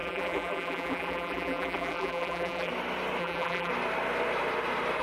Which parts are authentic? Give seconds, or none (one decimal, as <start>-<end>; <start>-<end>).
2.7-3.2; 3.7-5.0